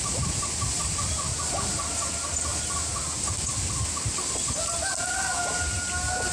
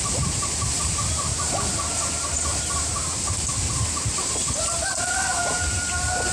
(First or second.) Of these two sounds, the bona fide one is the first